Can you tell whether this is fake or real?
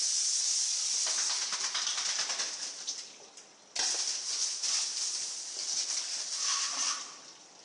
real